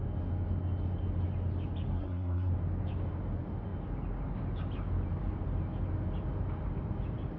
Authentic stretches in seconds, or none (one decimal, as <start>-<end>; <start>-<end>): 0.0-1.9; 2.5-7.4

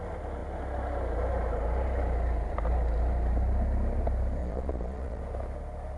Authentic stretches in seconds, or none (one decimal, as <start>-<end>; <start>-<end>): 0.0-4.4; 5.2-6.0

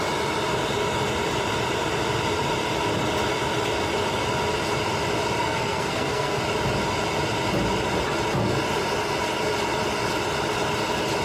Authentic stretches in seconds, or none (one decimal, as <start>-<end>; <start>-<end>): 0.0-5.4; 6.4-11.2

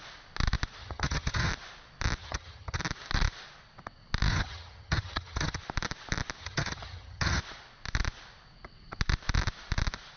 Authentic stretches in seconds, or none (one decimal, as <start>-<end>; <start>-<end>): 0.0-0.8; 1.5-2.2; 2.8-4.3; 5.6-6.4; 7.4-10.2

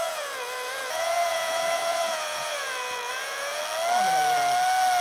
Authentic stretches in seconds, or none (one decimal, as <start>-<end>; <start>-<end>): 3.6-5.0

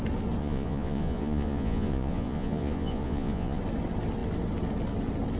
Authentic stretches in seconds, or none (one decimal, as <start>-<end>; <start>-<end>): 0.0-0.4; 3.6-5.4

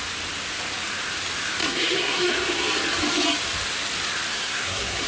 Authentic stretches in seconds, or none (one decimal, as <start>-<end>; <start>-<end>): 0.0-1.6; 2.3-4.3

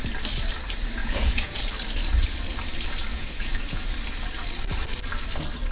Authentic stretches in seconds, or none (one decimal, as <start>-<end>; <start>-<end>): 0.0-1.0; 1.6-3.1; 3.8-5.7